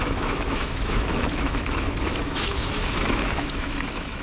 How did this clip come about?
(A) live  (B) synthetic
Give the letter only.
B